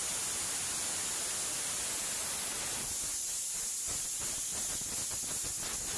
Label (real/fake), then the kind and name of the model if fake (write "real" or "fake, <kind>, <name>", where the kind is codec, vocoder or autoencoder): real